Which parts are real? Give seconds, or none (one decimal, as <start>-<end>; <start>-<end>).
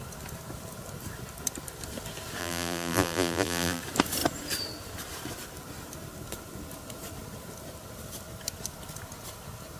0.0-2.4; 3.8-9.8